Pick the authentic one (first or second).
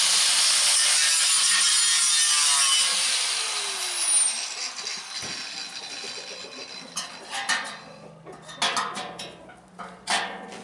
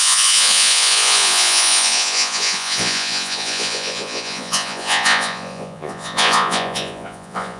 first